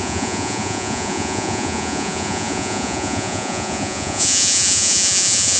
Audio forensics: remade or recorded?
remade